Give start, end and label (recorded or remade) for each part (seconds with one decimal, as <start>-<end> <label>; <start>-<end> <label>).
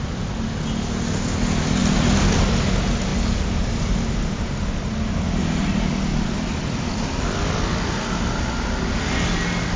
0.0-1.8 recorded; 1.8-2.5 remade; 2.5-6.1 recorded; 6.1-7.0 remade; 7.0-9.8 recorded